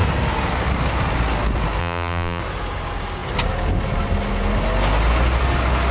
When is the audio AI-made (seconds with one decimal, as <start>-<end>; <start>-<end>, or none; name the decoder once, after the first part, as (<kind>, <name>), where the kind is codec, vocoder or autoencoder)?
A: 1.8-2.4 (vocoder, BigVGAN v2)